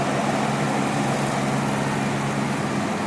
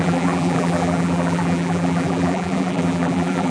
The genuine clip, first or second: first